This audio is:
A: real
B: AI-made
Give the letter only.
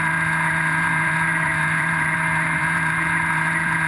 B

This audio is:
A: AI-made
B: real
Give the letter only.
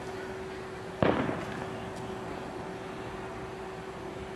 B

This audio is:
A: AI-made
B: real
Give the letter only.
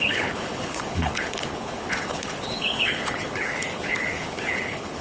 A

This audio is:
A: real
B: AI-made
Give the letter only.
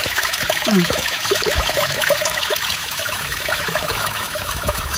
B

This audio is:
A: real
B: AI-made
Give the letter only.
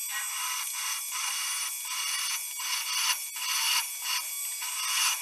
A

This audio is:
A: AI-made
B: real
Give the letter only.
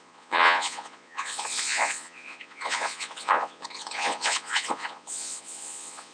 A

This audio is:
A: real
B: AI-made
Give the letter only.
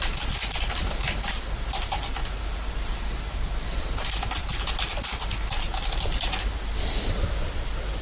A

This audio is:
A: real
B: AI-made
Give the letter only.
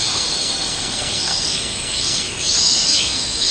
B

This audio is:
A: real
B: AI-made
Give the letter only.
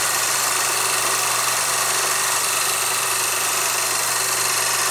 B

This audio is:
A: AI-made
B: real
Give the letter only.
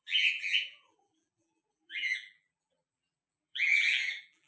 A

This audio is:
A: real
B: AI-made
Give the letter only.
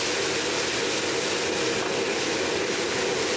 A